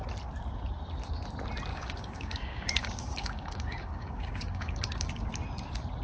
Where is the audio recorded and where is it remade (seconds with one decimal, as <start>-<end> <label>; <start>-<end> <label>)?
0.0-1.7 recorded; 1.7-5.3 remade; 5.3-6.0 recorded